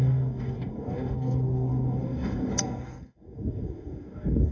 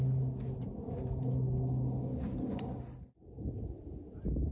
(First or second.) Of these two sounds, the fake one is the first